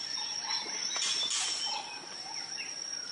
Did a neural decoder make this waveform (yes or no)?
no